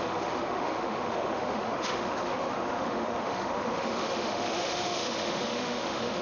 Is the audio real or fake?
fake